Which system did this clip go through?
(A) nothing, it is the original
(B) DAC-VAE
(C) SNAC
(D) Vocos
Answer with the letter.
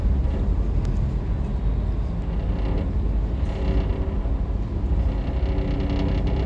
A